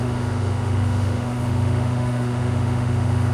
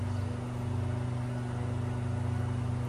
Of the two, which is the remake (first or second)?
first